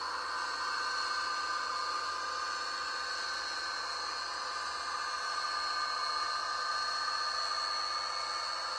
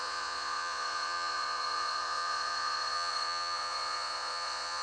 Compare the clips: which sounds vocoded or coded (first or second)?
second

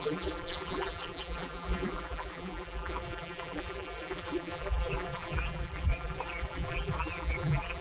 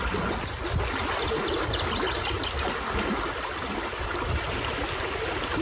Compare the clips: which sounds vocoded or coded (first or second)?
first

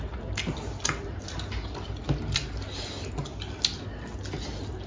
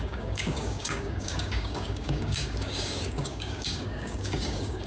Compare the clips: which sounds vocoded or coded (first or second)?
second